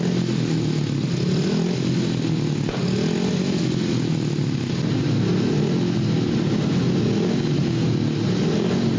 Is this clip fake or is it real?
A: real